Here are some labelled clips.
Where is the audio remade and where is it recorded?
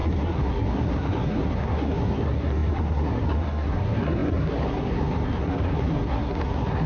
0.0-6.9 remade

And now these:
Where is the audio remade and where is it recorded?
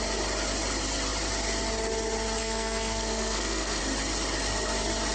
0.0-2.4 recorded; 2.4-3.8 remade; 3.8-5.1 recorded